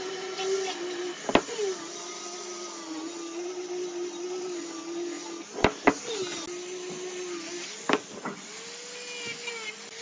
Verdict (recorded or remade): recorded